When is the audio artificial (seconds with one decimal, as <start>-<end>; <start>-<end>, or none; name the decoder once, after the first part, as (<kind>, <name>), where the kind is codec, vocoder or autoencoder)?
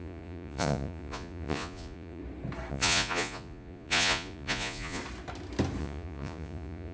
0.0-2.2 (vocoder, Vocos); 2.7-5.0; 5.8-6.9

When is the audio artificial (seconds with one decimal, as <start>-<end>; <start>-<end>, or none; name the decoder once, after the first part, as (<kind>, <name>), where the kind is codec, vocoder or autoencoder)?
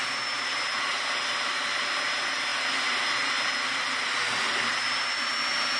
none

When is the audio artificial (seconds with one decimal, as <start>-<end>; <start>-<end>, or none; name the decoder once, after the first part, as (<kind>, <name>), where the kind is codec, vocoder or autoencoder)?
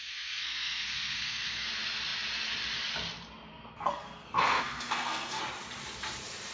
0.0-1.7 (codec, SNAC); 3.5-5.4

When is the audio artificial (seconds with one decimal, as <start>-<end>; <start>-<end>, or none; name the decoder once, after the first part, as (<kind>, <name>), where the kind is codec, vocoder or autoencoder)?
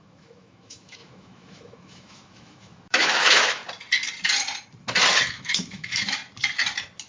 0.0-3.6 (autoencoder, DAC-VAE); 5.3-6.2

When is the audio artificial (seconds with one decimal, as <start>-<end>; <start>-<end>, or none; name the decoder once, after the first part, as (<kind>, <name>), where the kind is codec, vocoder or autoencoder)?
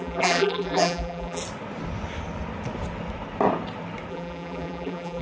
0.0-1.4 (vocoder, BigVGAN v2); 4.1-5.2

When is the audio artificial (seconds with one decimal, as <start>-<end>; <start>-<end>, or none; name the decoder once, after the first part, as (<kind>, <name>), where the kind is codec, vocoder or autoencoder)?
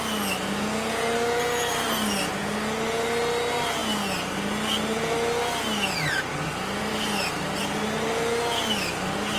none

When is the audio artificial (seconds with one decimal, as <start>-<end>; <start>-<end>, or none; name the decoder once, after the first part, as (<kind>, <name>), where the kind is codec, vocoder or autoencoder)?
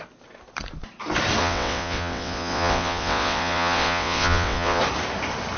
1.4-4.8 (vocoder, WaveNeXt)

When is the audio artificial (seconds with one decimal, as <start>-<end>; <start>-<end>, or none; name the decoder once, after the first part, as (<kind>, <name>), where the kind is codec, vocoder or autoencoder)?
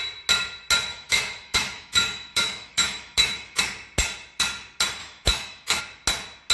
0.9-3.6 (autoencoder, DAC-VAE); 5.0-5.8